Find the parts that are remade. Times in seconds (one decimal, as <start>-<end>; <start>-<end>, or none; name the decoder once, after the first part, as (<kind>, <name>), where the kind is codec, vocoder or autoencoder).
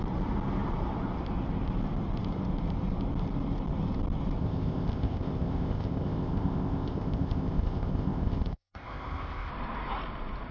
4.4-9.5 (codec, ZipCodec)